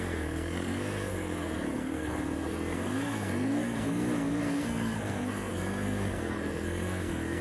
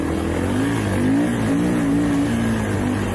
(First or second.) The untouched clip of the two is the second